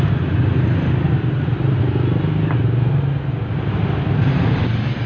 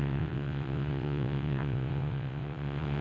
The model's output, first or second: second